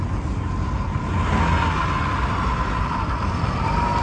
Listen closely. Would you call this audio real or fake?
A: real